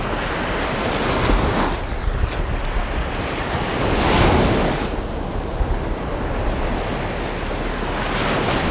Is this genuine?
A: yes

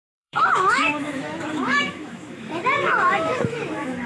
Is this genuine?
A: no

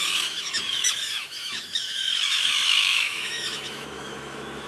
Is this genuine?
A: no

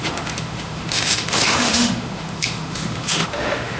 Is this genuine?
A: no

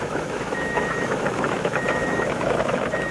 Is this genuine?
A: no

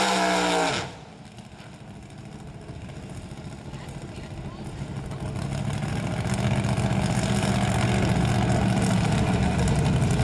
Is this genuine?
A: yes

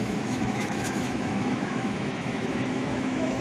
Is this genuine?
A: no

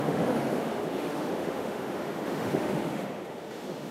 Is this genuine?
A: no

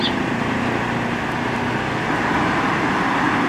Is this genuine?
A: yes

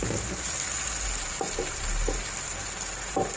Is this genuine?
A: yes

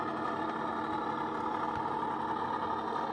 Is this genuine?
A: yes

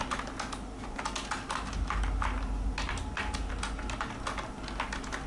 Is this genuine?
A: yes